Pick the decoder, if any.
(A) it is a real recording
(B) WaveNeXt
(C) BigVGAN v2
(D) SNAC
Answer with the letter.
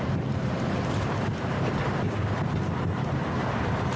C